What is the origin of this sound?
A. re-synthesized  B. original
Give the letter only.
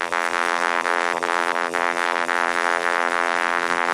A